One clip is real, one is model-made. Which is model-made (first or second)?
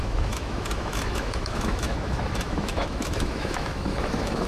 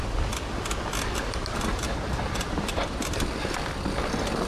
first